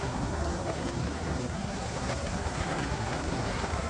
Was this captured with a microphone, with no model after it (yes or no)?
no